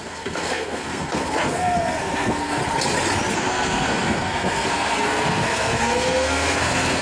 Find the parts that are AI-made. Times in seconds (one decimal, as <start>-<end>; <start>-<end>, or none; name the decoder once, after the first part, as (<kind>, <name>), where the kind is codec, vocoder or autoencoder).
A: 0.0-2.6 (codec, SNAC); 3.3-7.0